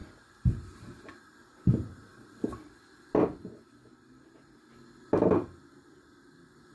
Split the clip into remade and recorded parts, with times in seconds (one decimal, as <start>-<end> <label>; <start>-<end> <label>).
0.0-1.0 recorded; 1.0-2.1 remade; 2.1-5.1 recorded; 5.1-6.7 remade